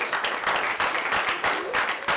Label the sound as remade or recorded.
recorded